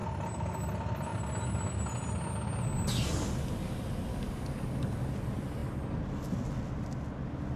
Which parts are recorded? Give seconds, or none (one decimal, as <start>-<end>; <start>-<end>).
0.0-4.1; 5.1-7.6